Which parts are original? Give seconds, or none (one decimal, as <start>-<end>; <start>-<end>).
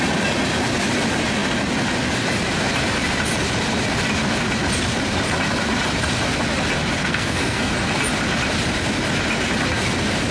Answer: 0.0-7.0; 7.7-10.3